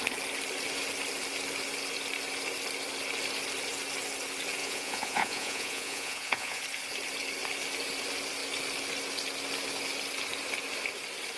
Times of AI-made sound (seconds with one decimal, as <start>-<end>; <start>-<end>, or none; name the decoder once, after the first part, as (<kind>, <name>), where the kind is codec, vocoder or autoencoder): 4.6-6.6 (vocoder, Vocos)